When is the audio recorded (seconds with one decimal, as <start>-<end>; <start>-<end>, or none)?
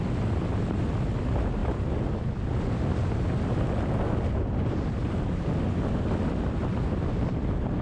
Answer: 0.0-7.8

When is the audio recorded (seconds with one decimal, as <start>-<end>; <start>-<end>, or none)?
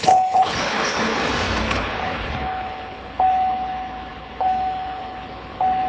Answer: 1.1-1.6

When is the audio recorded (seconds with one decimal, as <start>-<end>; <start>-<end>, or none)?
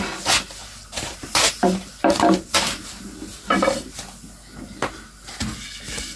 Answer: 0.0-0.6; 3.9-6.2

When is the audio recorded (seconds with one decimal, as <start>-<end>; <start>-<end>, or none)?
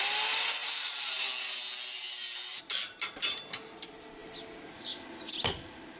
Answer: 0.0-0.6; 1.1-2.5; 3.1-6.0